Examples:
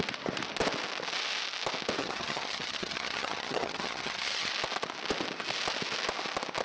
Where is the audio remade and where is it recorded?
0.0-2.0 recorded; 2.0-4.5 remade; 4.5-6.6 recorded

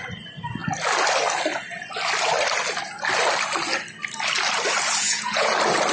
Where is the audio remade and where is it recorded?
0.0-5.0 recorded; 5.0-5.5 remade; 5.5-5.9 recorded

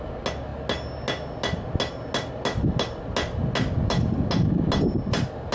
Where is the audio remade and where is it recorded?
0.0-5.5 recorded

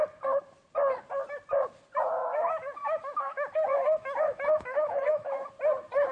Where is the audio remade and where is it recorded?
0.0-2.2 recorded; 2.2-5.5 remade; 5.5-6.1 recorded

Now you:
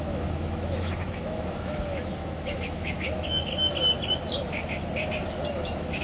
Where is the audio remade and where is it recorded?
0.0-3.5 remade; 3.5-5.5 recorded; 5.5-6.0 remade

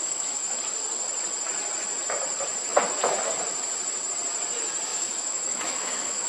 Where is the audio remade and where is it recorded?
0.0-0.6 remade; 0.6-4.9 recorded; 4.9-6.3 remade